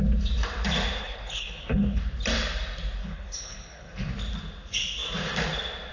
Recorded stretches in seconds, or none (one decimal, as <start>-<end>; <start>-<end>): 0.0-1.0; 2.0-3.0; 4.1-5.9